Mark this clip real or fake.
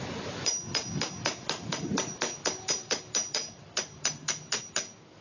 real